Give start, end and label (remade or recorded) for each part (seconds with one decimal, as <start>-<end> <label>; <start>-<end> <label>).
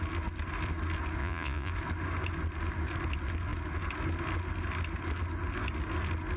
0.0-1.2 recorded; 1.2-1.7 remade; 1.7-6.4 recorded